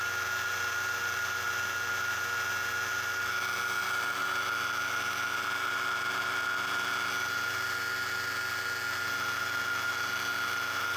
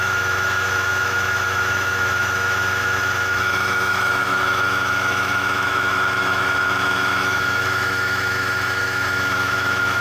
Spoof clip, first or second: second